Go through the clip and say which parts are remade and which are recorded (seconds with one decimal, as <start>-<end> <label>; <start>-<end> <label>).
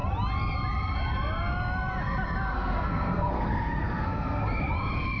0.0-2.5 recorded; 2.5-4.4 remade; 4.4-5.2 recorded